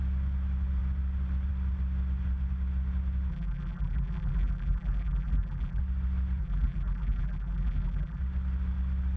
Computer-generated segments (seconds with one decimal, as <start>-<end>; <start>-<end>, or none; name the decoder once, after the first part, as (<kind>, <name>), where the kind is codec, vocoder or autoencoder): 3.3-5.8 (vocoder, BigVGAN v2); 6.4-8.2